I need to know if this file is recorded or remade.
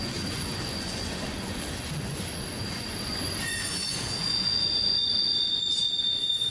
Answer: remade